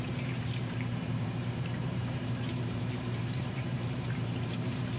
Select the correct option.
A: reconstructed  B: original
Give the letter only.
A